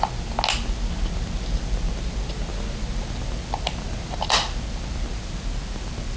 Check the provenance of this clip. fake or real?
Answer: real